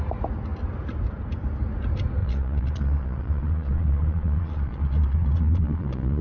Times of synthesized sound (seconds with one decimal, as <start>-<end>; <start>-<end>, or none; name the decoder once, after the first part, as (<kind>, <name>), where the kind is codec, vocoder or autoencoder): 2.2-6.2 (vocoder, Vocos)